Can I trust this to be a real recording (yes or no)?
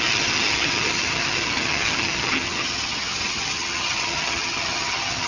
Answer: no